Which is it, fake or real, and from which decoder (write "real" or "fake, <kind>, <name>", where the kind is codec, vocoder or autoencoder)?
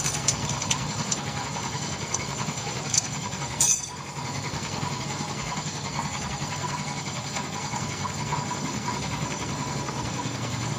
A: fake, codec, SNAC